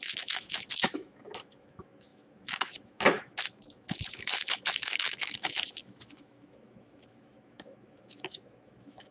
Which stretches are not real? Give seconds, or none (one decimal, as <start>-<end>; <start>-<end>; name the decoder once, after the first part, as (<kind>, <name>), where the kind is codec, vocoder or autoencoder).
0.0-9.1 (autoencoder, DAC-VAE)